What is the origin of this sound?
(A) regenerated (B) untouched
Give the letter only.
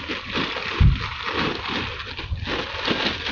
B